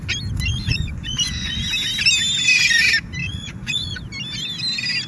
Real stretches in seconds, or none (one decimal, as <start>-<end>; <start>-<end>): 0.0-0.5; 1.6-3.2; 4.0-5.1